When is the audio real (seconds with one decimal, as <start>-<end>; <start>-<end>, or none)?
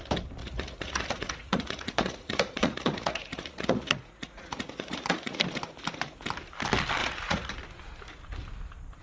0.0-0.4; 5.4-7.0; 7.5-9.0